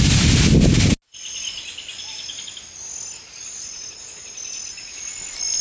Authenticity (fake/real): real